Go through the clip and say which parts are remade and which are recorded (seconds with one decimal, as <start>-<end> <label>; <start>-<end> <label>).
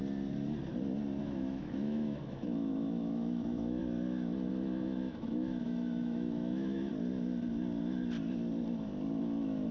0.0-1.2 recorded; 1.2-3.8 remade; 3.8-4.5 recorded; 4.5-6.9 remade; 6.9-9.2 recorded; 9.2-9.7 remade